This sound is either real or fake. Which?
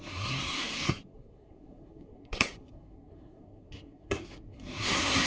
fake